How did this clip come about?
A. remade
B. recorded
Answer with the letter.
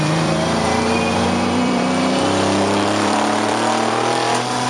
A